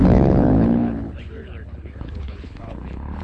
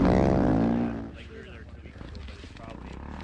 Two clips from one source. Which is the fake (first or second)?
first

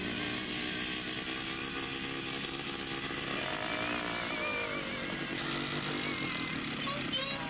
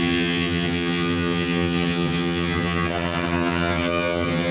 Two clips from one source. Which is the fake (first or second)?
second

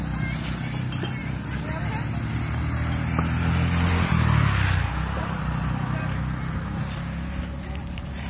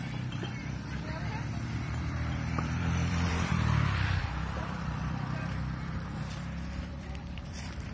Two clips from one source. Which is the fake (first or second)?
second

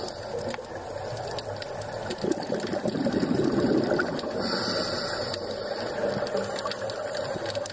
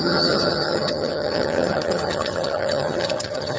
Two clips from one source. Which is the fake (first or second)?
second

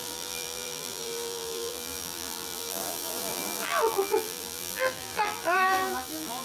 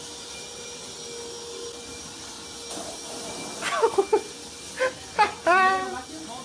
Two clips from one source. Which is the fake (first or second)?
first